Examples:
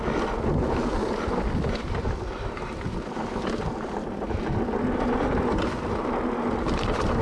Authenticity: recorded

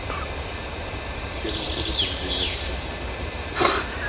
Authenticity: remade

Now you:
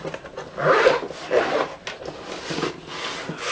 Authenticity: recorded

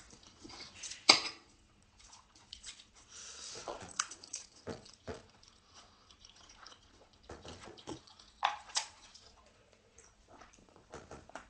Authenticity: remade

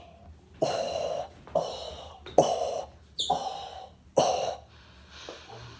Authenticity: recorded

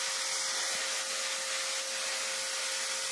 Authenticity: recorded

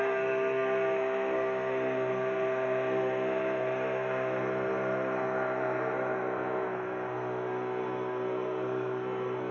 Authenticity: remade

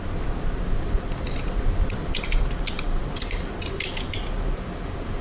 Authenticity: recorded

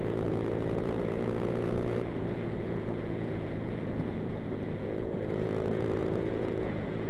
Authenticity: remade